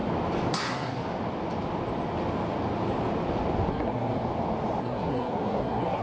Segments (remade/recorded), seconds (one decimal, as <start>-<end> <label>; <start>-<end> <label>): 0.0-0.5 recorded; 0.5-1.0 remade; 1.0-3.7 recorded; 3.7-4.2 remade; 4.2-4.8 recorded; 4.8-6.0 remade